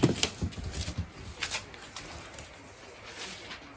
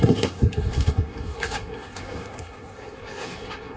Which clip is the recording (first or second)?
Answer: first